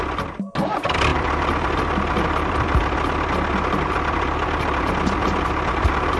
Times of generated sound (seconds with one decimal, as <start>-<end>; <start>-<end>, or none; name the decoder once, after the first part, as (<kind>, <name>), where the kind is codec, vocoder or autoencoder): none